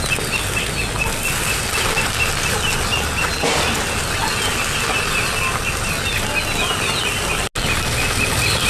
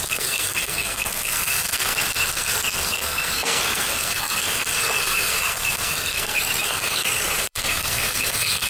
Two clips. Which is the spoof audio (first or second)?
second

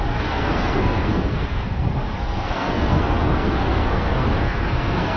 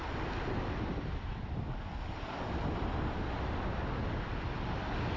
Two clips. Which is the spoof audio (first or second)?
first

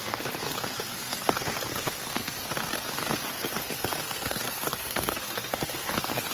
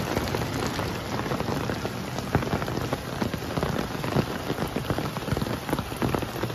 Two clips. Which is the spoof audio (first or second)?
first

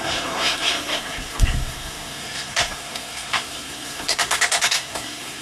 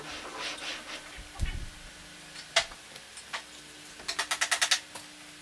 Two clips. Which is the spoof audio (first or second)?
first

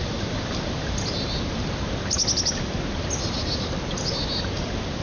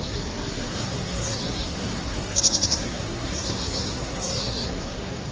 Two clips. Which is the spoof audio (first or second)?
second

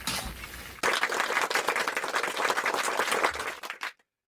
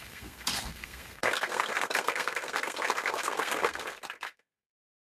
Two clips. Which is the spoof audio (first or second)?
second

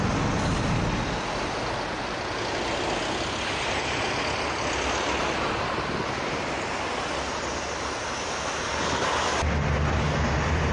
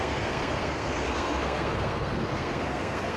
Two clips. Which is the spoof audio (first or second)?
second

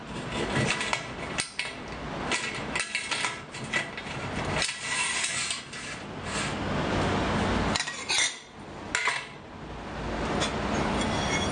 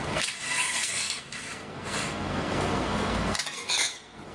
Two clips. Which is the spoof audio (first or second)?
second